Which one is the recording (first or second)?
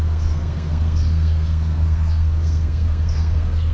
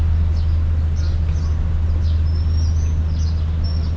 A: second